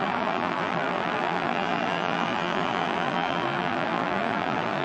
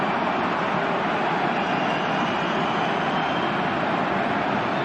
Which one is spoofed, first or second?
first